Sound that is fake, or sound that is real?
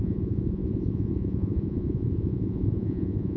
fake